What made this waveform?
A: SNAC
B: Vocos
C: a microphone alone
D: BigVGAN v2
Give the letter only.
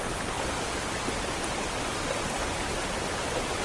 C